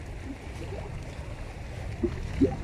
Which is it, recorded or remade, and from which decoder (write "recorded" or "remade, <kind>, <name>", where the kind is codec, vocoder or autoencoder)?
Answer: recorded